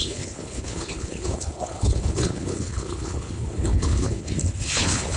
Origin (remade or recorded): remade